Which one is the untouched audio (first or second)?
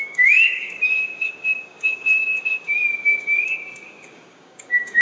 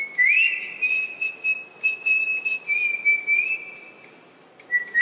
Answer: second